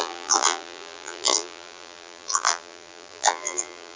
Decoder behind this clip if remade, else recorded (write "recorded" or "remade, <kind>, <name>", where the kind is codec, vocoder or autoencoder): remade, vocoder, BigVGAN v2